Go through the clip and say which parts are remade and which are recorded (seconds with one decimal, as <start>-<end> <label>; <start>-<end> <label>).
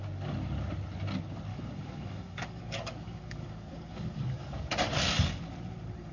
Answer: 0.0-1.5 recorded; 1.5-4.7 remade; 4.7-6.1 recorded